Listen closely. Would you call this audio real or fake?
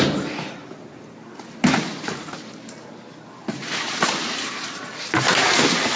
real